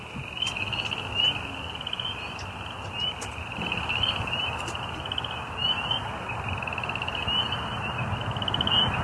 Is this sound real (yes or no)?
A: yes